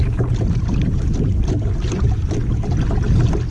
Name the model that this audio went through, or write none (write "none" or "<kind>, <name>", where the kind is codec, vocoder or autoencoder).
none